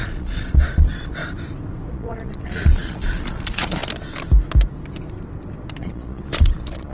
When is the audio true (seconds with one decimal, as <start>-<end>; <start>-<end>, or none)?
1.2-1.9; 3.8-5.8